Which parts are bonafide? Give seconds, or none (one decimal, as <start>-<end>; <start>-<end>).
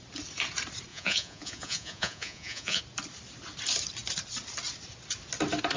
0.0-0.9; 2.8-5.8